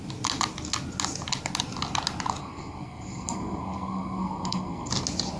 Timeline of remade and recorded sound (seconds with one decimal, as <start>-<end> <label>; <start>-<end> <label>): 0.0-2.4 recorded; 2.4-4.9 remade; 4.9-5.4 recorded